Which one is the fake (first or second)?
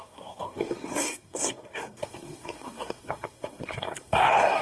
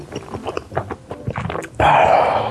first